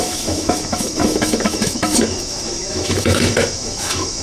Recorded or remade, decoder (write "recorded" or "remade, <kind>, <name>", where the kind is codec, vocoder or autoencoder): remade, autoencoder, DAC-VAE